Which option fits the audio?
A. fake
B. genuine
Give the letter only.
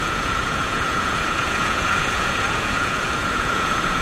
A